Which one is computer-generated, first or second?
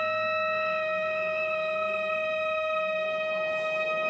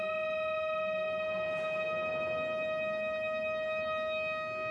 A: first